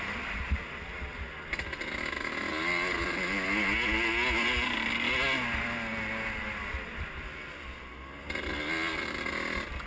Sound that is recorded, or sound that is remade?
recorded